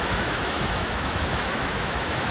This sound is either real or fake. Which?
fake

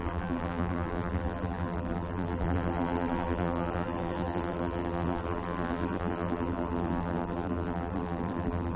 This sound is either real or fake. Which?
fake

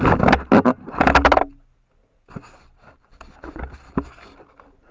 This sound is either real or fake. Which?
real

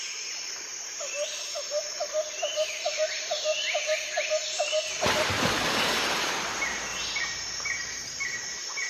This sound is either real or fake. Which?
fake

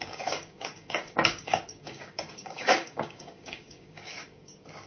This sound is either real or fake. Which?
fake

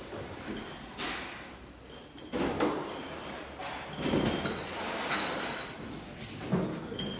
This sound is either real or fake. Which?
real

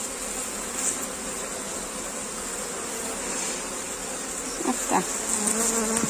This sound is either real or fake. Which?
real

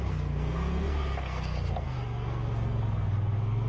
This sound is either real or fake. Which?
fake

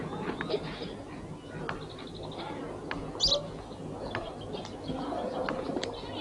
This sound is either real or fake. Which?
real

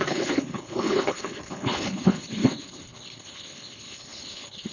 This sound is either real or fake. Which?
fake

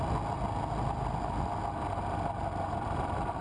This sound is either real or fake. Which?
real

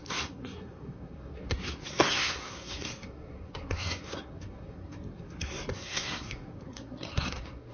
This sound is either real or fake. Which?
fake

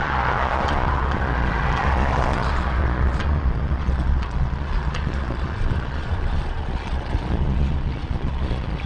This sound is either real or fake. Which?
fake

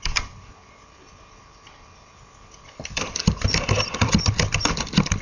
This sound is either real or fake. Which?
fake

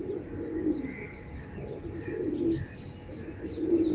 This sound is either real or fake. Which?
real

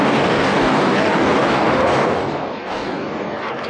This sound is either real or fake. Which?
fake